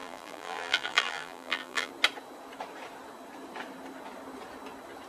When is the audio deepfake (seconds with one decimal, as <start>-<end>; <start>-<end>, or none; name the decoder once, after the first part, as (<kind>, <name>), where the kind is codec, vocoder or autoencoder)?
0.0-1.9 (vocoder, BigVGAN v2)